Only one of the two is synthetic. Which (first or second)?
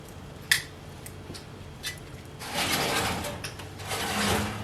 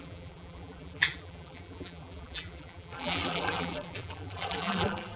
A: second